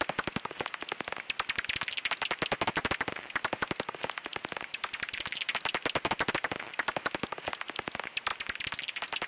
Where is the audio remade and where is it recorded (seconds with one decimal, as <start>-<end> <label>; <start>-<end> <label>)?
0.0-4.3 recorded; 4.3-5.4 remade; 5.4-8.3 recorded; 8.3-9.3 remade